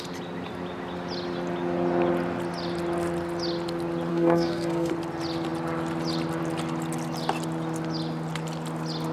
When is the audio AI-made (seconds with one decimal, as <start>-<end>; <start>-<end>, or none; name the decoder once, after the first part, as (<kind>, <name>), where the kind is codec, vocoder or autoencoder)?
4.1-4.9 (codec, SNAC)